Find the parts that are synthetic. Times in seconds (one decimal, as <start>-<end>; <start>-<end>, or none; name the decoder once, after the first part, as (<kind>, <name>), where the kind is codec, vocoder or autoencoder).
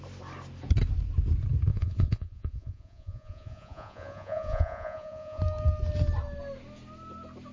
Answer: 1.7-5.4 (vocoder, Vocos)